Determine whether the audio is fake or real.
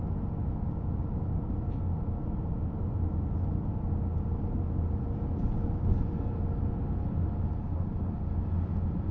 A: real